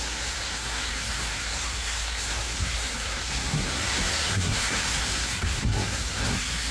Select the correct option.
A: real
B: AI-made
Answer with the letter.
B